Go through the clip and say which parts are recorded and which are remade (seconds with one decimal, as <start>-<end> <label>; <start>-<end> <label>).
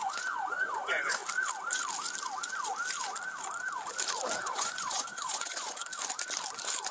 0.0-1.2 remade; 1.2-4.4 recorded; 4.4-5.8 remade; 5.8-6.9 recorded